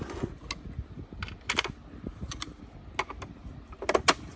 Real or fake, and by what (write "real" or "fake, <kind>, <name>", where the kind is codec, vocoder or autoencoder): real